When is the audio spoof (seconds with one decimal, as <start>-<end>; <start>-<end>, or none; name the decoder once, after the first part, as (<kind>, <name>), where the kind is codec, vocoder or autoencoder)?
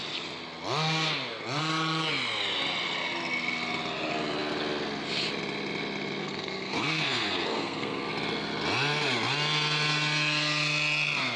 6.2-8.0 (codec, SNAC)